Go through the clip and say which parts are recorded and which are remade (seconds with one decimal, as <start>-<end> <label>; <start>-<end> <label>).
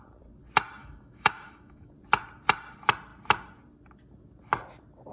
0.0-0.8 recorded; 0.8-1.9 remade; 1.9-5.1 recorded